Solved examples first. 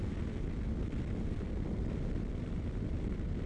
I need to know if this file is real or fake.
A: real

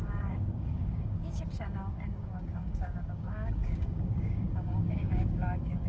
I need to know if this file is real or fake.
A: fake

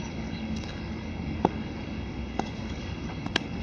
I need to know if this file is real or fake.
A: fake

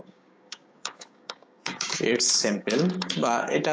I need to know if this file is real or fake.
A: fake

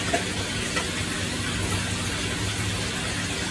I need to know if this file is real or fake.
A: real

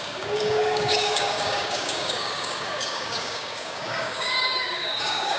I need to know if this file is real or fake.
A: fake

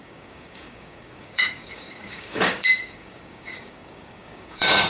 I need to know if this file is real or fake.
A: fake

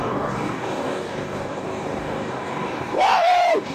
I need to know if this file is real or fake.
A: fake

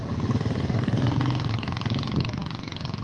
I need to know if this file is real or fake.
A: fake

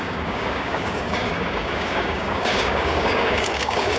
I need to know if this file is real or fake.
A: fake